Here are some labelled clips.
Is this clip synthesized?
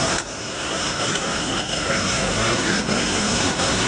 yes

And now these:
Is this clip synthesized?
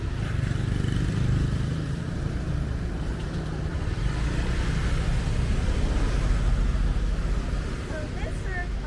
no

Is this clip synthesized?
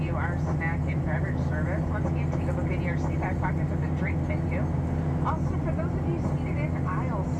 no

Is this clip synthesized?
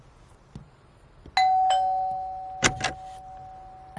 no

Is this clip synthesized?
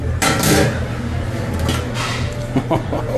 no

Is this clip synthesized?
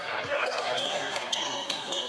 yes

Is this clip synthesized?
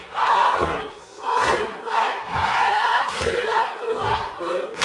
yes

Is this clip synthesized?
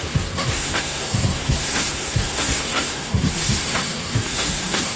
yes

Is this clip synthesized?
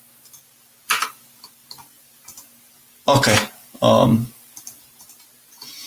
no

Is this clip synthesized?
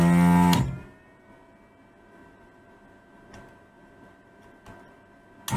no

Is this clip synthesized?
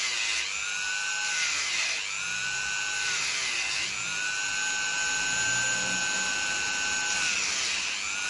no